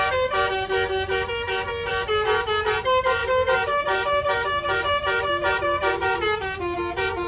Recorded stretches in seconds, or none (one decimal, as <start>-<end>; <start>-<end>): 0.0-7.3